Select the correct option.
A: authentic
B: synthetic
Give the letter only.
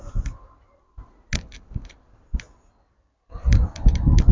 A